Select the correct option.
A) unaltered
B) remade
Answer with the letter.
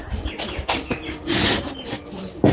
B